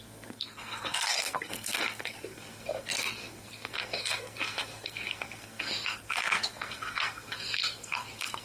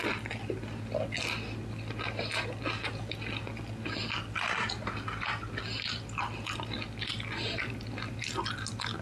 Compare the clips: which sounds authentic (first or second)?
second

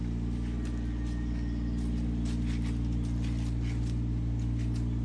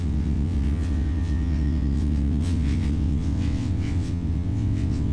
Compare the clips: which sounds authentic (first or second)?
first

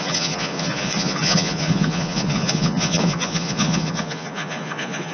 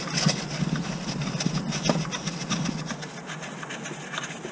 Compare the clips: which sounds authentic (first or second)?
second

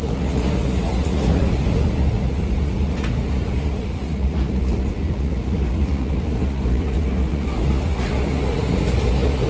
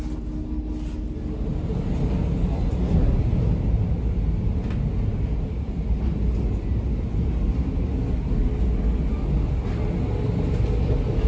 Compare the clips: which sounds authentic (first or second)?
second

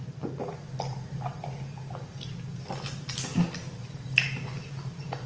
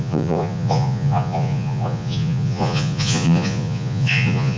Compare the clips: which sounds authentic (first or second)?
first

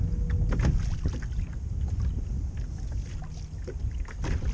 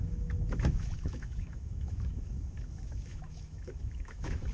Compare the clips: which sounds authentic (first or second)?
first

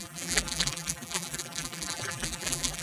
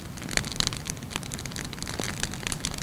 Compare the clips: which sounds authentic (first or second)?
second